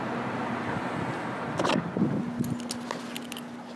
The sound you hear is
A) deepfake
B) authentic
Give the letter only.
B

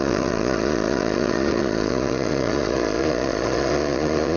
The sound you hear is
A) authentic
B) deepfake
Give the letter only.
B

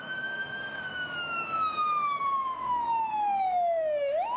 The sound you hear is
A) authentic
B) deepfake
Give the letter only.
B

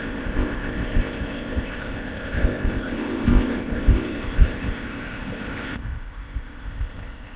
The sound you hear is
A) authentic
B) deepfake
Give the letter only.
B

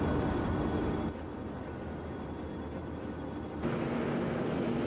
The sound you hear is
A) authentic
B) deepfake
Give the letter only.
A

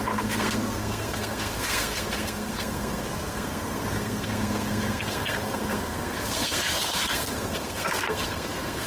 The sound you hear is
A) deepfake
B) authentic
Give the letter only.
A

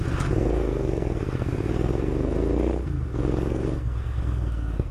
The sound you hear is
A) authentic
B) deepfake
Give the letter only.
B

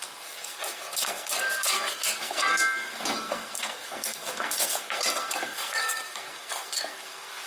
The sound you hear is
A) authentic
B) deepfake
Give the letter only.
B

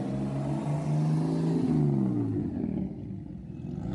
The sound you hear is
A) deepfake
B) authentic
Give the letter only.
B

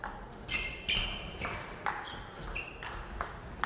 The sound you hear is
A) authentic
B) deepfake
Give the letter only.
A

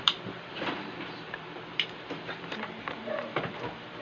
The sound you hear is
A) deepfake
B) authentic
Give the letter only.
A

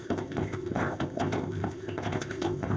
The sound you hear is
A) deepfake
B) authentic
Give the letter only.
A